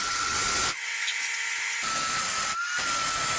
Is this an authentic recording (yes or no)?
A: yes